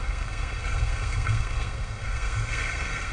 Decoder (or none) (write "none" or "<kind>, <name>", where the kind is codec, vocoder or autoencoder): codec, SNAC